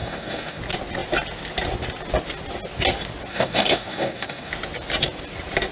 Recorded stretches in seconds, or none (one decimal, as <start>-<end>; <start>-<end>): 0.6-3.3; 4.5-5.7